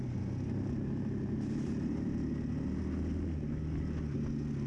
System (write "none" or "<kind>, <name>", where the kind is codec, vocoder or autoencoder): none